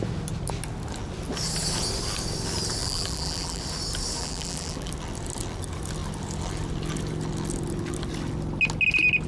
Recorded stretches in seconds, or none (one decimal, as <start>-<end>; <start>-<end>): 0.0-2.8; 3.6-4.2; 4.9-9.3